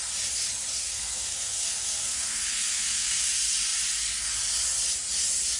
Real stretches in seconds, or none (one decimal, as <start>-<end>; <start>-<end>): 0.0-0.8; 3.3-5.6